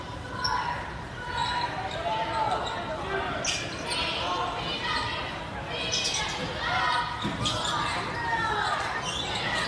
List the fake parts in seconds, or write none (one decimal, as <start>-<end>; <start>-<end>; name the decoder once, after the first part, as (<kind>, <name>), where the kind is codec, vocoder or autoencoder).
none